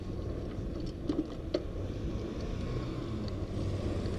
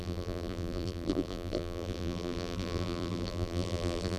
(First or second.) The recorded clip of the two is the first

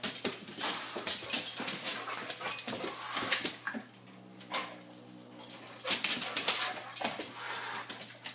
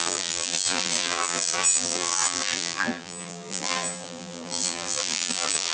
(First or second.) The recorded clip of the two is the first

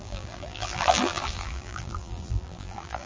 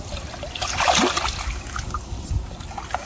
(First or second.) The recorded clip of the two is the second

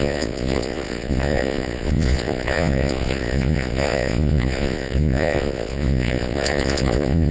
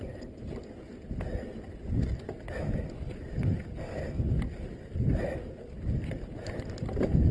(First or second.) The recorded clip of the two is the second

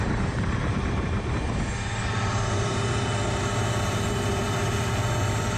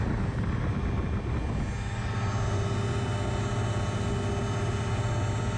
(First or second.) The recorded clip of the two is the second